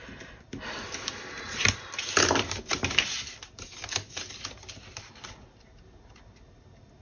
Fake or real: real